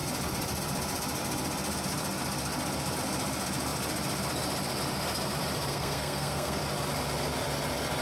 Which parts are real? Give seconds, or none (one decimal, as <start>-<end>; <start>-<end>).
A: 0.0-5.7; 6.6-8.0